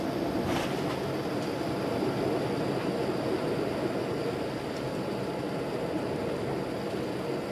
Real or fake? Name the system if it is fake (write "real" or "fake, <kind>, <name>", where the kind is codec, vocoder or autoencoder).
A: real